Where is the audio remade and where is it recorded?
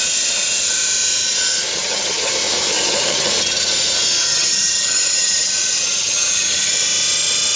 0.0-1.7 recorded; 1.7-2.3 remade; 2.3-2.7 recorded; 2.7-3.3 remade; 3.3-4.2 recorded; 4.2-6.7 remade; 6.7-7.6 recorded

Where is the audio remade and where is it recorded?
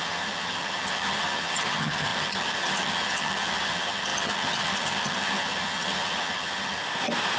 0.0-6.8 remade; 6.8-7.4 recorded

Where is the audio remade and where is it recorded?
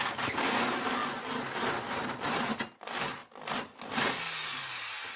0.0-5.2 recorded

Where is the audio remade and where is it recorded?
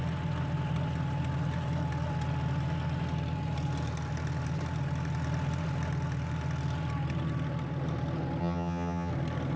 0.0-8.4 recorded; 8.4-9.1 remade; 9.1-9.6 recorded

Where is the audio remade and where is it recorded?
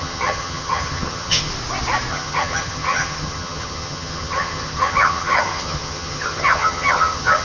0.0-1.5 remade; 1.5-2.1 recorded; 2.1-7.4 remade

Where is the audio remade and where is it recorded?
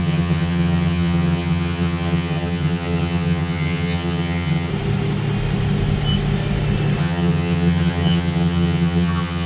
0.0-4.7 remade; 4.7-7.0 recorded; 7.0-9.5 remade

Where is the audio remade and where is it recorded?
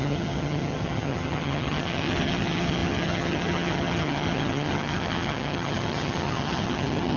0.0-7.2 remade